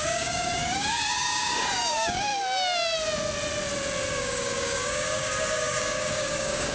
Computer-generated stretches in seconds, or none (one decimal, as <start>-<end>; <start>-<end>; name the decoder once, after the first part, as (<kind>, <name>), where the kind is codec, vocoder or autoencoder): 0.0-2.3 (codec, DAC); 4.1-6.7